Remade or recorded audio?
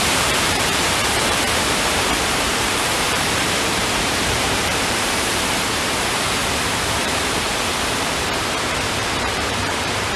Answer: remade